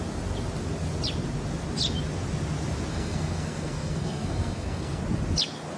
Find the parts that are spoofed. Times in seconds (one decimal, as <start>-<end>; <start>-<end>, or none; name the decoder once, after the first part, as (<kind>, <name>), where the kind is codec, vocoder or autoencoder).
2.9-5.0 (codec, SNAC)